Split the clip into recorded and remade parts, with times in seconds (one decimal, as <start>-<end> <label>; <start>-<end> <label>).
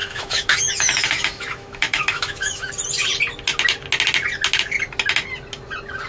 0.0-2.7 remade; 2.7-6.1 recorded